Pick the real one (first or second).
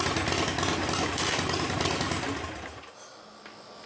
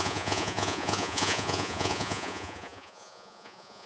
first